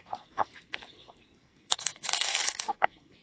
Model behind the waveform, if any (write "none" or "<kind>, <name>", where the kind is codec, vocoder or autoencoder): codec, SNAC